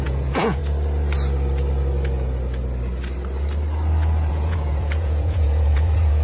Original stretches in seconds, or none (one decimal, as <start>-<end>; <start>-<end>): 0.6-4.3